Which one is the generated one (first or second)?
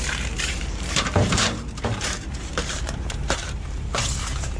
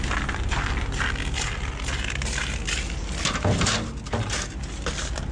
first